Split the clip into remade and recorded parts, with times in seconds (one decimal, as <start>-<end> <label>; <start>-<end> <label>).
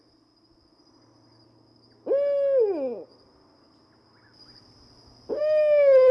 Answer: 0.0-6.1 recorded